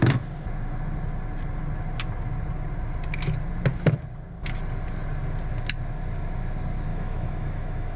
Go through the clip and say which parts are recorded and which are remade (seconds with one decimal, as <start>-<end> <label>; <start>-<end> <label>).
0.0-6.9 recorded; 6.9-8.0 remade